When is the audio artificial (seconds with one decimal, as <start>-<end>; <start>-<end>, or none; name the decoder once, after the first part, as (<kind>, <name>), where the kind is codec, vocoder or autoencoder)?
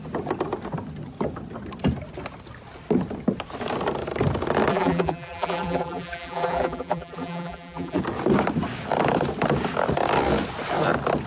4.7-8.0 (vocoder, BigVGAN v2)